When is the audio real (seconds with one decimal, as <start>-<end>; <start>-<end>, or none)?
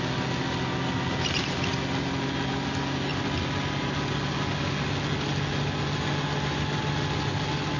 0.0-7.8